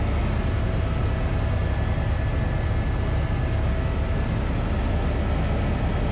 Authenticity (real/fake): real